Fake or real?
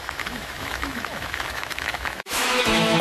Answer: fake